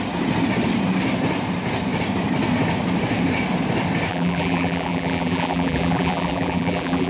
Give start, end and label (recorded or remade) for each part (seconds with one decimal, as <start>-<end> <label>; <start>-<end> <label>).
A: 0.0-4.1 recorded; 4.1-7.1 remade